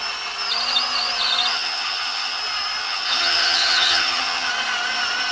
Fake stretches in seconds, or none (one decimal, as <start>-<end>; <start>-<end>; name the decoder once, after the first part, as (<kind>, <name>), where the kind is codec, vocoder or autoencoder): 1.5-2.4 (vocoder, HiFi-GAN); 2.8-4.5